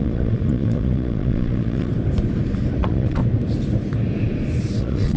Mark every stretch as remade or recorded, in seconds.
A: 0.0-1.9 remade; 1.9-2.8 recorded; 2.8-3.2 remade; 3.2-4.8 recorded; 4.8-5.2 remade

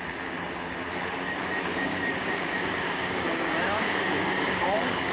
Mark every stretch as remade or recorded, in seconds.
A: 0.0-1.7 recorded; 1.7-5.1 remade